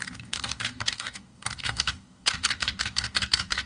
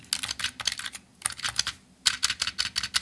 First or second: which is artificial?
first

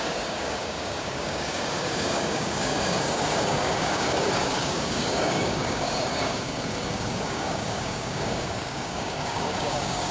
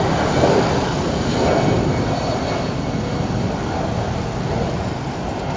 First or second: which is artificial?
first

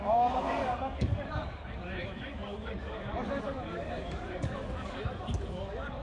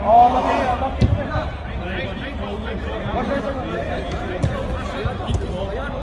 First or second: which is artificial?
first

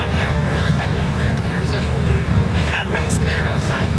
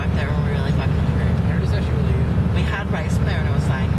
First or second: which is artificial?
first